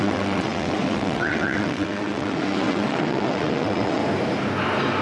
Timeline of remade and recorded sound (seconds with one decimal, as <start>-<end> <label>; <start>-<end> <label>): 0.0-4.0 remade; 4.0-5.0 recorded